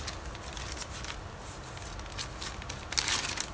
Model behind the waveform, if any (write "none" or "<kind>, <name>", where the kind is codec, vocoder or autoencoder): none